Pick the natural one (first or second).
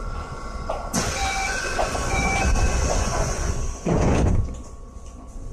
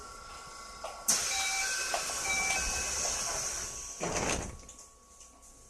second